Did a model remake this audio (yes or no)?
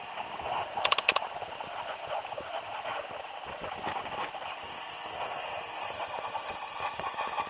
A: no